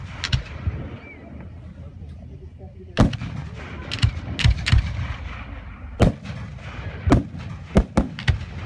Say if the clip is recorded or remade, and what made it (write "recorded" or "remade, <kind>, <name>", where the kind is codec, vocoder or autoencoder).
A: recorded